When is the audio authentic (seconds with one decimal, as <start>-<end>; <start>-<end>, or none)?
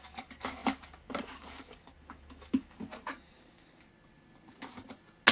3.9-5.3